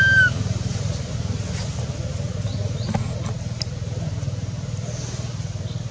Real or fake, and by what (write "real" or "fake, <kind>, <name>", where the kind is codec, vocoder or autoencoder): real